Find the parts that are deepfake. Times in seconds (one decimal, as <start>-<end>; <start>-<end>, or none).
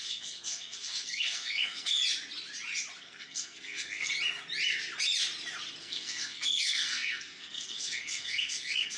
0.0-2.0; 3.0-4.1; 5.8-9.0